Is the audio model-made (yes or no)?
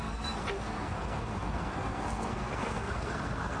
yes